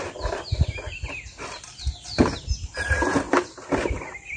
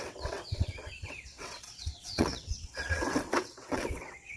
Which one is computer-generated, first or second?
second